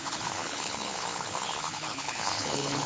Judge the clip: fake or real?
fake